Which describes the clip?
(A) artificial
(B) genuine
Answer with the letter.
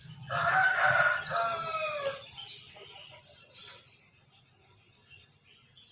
B